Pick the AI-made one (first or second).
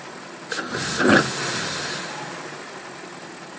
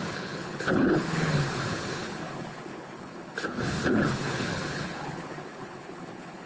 second